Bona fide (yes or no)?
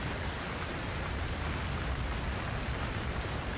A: yes